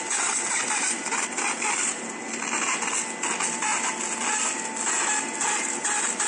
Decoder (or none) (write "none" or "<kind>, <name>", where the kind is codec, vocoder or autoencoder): none